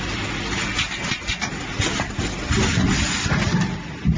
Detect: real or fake real